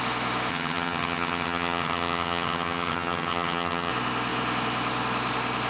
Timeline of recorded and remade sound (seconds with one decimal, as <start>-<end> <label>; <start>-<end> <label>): 0.0-0.5 recorded; 0.5-3.9 remade; 3.9-5.7 recorded